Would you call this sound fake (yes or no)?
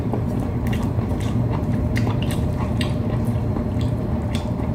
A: yes